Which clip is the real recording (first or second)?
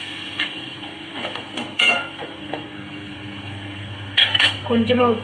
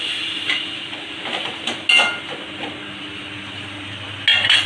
second